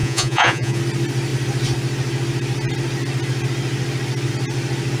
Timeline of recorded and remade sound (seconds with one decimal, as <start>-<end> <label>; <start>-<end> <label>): 0.0-0.8 remade; 0.8-5.0 recorded